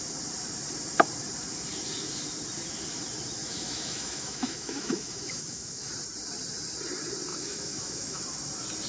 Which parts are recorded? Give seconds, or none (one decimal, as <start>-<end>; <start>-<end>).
0.0-3.4; 5.9-7.3; 8.2-8.9